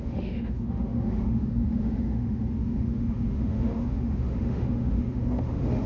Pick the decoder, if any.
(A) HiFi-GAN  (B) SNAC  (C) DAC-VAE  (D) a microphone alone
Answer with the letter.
C